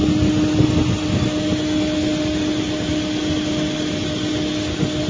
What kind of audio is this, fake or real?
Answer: real